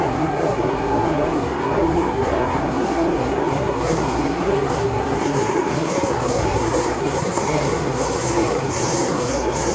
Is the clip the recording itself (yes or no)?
no